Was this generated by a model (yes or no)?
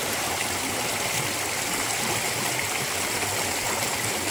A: no